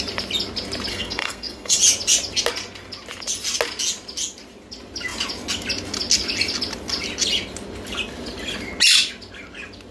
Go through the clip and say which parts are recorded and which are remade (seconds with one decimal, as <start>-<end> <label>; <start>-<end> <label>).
0.0-0.9 recorded; 0.9-1.8 remade; 1.8-9.9 recorded